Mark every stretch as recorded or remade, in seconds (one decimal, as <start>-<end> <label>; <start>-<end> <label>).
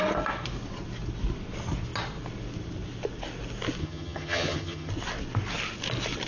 0.0-3.8 recorded; 3.8-4.9 remade; 4.9-6.3 recorded